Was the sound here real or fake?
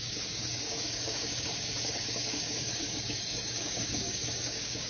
fake